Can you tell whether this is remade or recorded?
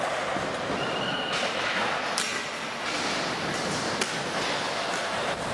recorded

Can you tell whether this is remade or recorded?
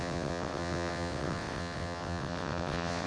remade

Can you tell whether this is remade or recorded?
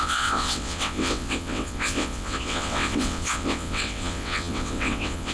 remade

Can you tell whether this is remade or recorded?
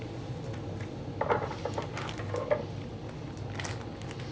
recorded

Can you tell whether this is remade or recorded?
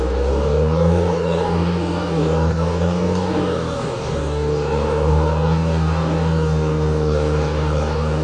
remade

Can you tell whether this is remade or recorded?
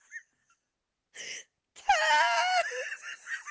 recorded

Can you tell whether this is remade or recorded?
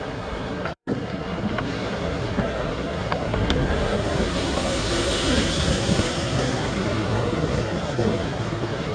remade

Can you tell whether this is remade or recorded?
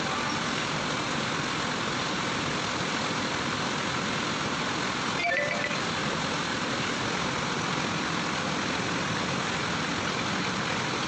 remade